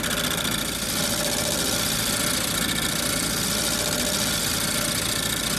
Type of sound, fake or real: real